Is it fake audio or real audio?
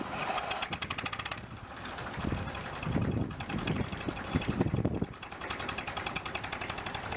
real